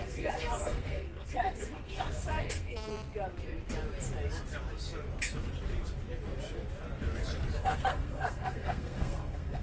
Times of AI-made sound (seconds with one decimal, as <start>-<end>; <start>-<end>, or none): 0.0-2.9; 7.6-9.6